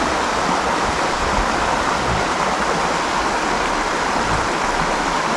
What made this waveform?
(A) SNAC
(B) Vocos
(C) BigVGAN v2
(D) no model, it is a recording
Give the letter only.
D